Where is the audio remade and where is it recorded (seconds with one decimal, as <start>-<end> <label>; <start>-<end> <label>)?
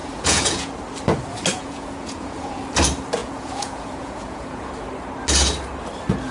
0.0-0.7 remade; 0.7-1.5 recorded; 1.5-2.6 remade; 2.6-3.2 recorded; 3.2-4.7 remade; 4.7-6.3 recorded